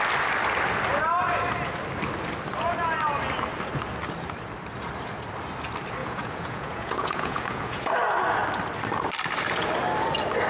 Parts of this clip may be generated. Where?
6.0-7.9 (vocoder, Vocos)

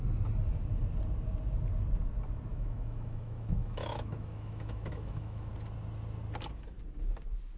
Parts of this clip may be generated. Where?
2.5-5.5 (autoencoder, DAC-VAE)

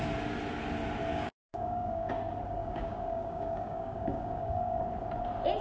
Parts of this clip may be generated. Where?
1.1-2.1 (codec, DAC); 2.6-4.8

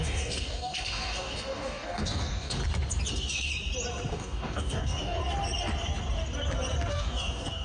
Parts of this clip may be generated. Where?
0.0-2.6 (codec, DAC); 3.1-3.5; 4.1-5.2; 6.9-7.6

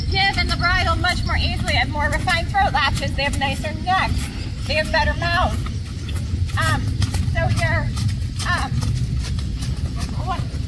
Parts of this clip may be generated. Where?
none

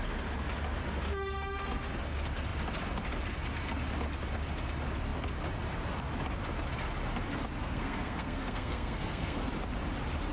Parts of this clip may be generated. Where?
7.6-9.5 (codec, SNAC)

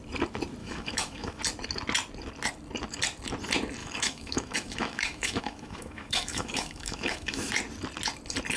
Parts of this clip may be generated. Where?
0.6-1.4 (autoencoder, DAC-VAE); 3.8-7.5

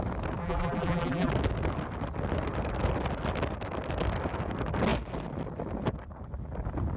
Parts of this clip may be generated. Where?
0.4-1.3 (vocoder, BigVGAN v2)